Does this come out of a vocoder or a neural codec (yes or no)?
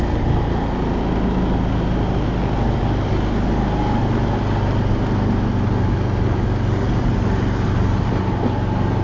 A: no